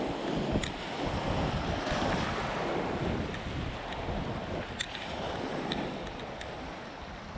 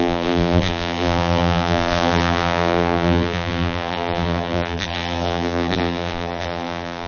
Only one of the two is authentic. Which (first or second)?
first